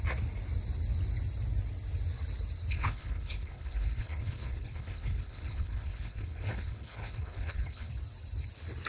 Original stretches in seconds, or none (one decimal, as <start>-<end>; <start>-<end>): 0.0-2.7; 7.9-8.9